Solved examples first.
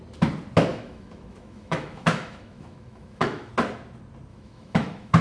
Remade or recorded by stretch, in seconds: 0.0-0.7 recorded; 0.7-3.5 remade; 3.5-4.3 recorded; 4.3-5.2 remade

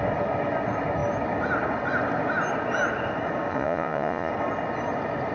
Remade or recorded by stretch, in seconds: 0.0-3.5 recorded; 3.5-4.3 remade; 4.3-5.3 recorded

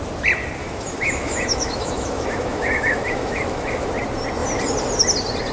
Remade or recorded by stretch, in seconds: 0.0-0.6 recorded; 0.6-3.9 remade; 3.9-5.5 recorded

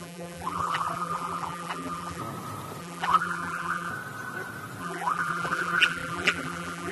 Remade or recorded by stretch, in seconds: 0.0-2.2 remade; 2.2-2.8 recorded; 2.8-3.9 remade; 3.9-4.8 recorded; 4.8-6.9 remade